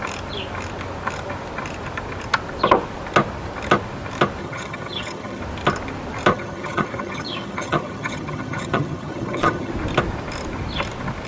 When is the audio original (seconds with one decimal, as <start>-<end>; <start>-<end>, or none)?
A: 0.0-4.4; 5.4-6.3; 9.7-11.3